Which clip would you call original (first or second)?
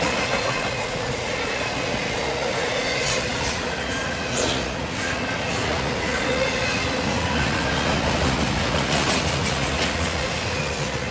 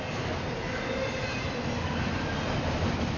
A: second